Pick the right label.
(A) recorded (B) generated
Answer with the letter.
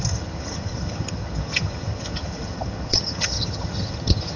B